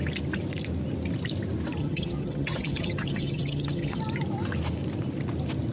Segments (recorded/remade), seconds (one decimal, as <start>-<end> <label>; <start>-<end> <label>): 0.0-1.8 recorded; 1.8-4.0 remade; 4.0-5.7 recorded